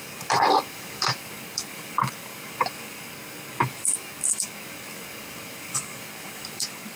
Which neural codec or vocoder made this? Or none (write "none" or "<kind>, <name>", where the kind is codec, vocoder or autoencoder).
codec, DAC